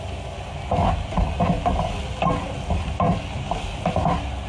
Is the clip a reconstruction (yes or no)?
no